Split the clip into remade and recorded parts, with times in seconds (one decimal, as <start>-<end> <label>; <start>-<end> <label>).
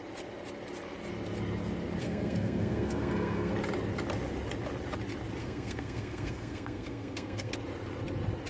0.0-2.0 recorded; 2.0-3.5 remade; 3.5-5.4 recorded; 5.4-7.5 remade; 7.5-8.5 recorded